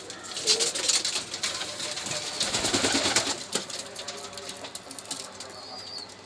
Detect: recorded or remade recorded